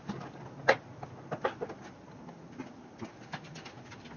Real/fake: real